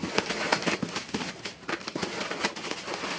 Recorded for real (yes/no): yes